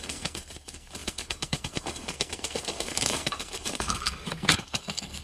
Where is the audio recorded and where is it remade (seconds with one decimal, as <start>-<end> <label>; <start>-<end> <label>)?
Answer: 0.0-5.2 remade